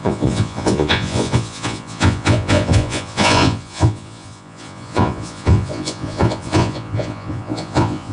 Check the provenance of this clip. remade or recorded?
remade